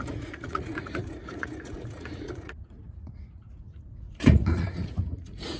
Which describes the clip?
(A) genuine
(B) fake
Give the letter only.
B